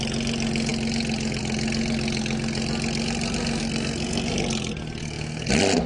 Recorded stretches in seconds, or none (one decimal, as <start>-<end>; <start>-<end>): 0.0-3.6; 4.3-5.0; 5.5-5.9